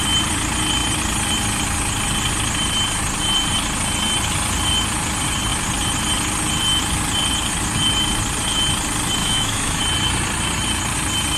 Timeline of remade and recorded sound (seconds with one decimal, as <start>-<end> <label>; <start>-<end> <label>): 0.0-9.2 recorded; 9.2-9.8 remade; 9.8-11.4 recorded